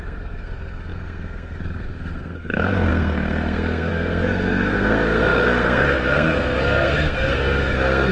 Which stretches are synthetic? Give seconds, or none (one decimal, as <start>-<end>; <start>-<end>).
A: 0.0-8.1